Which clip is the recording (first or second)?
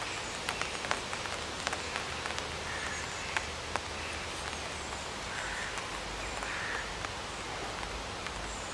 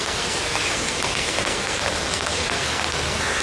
first